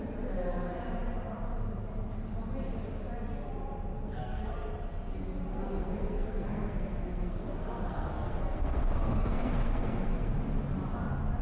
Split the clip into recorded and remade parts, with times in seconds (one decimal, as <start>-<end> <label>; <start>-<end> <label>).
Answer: 0.0-3.9 recorded; 3.9-4.7 remade; 4.7-5.5 recorded; 5.5-10.4 remade; 10.4-11.4 recorded